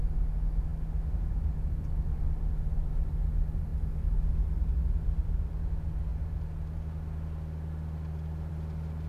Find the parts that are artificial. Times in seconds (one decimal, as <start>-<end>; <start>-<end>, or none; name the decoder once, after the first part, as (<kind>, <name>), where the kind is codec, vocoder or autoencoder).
none